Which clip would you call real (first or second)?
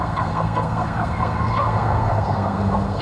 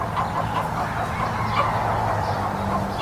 second